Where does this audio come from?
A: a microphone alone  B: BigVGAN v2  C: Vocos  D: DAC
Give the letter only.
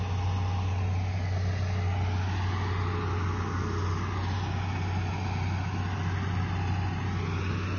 A